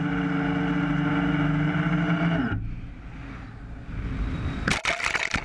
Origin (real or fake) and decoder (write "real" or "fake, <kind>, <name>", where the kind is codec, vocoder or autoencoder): real